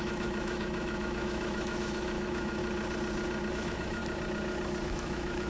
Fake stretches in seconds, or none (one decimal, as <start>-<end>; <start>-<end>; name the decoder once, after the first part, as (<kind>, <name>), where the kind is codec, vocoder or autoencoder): 0.0-2.6 (autoencoder, DAC-VAE); 3.5-4.0; 4.9-5.5